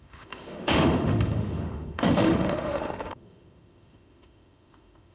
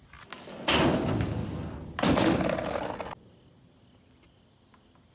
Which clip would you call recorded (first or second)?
second